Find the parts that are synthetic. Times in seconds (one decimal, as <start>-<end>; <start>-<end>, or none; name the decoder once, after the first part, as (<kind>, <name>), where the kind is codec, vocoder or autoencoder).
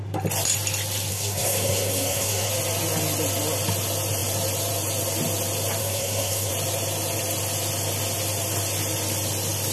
1.1-2.5 (codec, SNAC); 5.8-6.5